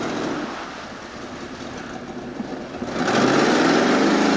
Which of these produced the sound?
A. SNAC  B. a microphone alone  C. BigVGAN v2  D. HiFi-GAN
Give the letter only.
B